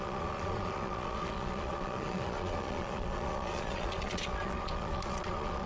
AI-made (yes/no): yes